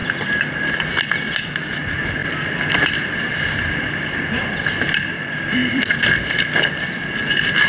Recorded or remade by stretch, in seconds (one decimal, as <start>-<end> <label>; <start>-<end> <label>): 0.0-0.9 remade; 0.9-7.7 recorded